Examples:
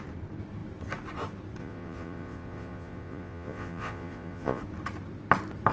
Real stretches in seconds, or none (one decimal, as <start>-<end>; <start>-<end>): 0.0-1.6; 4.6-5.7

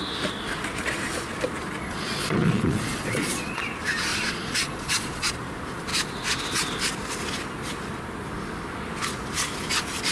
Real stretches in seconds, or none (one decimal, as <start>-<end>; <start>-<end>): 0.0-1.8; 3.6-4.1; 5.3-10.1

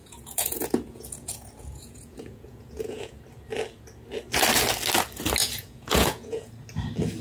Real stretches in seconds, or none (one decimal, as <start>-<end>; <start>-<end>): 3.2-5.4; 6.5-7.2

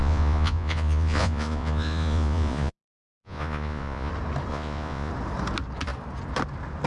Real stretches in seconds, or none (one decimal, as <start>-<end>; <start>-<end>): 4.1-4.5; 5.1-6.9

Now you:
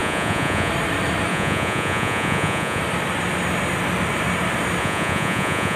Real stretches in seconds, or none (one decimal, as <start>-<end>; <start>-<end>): 0.7-1.3; 2.8-4.8